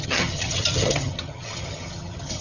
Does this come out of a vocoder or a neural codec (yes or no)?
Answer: yes